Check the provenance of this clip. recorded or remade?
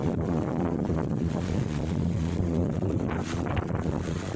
remade